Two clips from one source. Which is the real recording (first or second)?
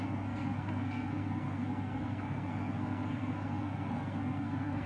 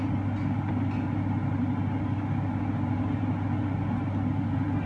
second